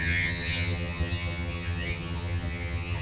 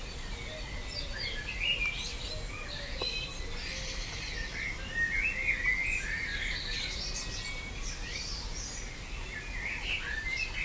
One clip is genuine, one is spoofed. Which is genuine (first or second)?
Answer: second